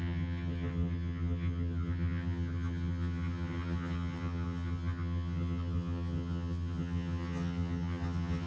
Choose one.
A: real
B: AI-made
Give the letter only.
B